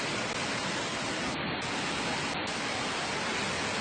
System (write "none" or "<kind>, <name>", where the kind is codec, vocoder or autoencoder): none